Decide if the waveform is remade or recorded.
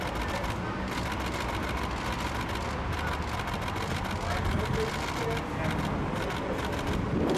recorded